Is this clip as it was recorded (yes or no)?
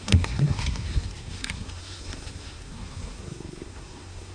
no